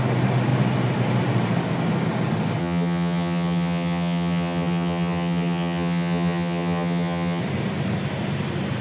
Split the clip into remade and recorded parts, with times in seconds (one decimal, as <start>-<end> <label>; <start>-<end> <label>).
0.0-2.6 recorded; 2.6-7.4 remade; 7.4-8.8 recorded

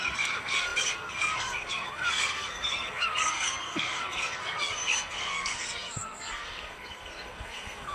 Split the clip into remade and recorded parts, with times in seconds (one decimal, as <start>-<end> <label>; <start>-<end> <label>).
0.0-7.9 remade